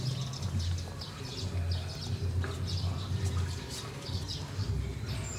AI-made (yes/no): no